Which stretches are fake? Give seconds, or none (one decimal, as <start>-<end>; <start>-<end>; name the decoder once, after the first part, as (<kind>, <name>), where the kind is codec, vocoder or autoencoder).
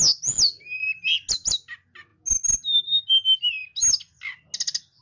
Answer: none